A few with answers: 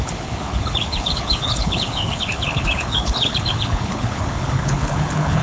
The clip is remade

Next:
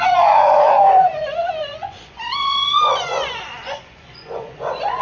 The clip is remade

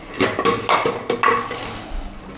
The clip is recorded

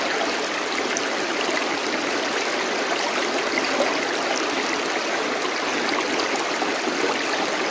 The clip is recorded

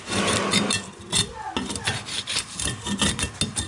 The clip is recorded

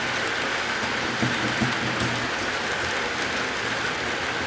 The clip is recorded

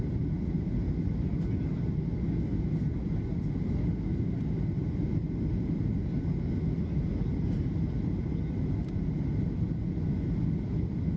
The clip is recorded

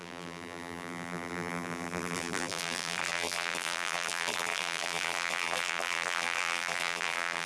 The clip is remade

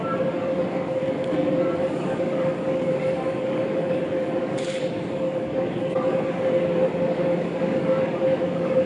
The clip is remade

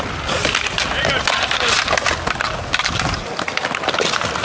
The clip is recorded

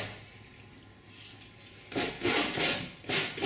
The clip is recorded